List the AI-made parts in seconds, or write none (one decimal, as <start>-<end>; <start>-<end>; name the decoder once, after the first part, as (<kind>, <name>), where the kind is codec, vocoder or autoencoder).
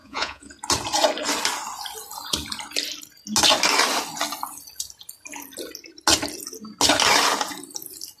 0.0-0.5 (vocoder, Vocos)